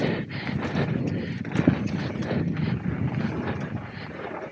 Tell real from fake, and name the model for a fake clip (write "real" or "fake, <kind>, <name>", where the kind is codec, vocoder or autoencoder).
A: real